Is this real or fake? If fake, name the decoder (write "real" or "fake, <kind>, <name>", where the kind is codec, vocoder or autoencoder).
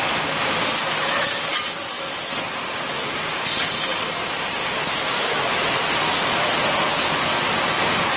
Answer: real